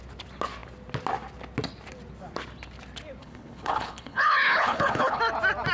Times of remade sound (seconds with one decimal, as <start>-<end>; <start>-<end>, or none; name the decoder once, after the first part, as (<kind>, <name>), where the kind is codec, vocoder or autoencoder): 3.2-5.2 (codec, HILCodec)